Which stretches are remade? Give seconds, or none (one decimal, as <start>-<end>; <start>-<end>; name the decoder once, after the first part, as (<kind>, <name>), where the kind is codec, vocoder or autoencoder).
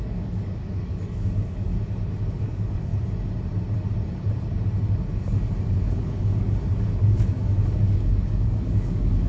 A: 0.0-1.7 (codec, DAC); 2.3-2.9; 5.2-9.3